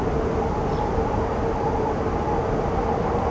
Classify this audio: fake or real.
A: real